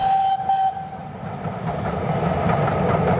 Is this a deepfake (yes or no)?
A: no